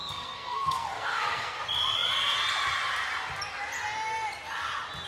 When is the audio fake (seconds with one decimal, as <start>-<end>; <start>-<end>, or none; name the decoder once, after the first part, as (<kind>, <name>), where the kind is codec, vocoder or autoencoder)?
0.0-1.6 (codec, SNAC)